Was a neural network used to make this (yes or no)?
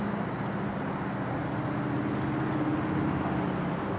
no